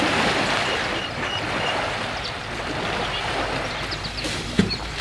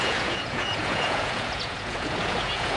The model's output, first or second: second